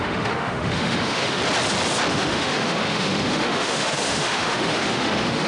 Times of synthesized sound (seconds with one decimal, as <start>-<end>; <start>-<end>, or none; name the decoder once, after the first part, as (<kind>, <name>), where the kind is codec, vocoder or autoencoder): 0.0-1.4 (autoencoder, DAC-VAE); 2.1-5.5